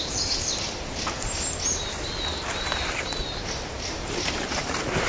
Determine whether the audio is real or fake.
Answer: real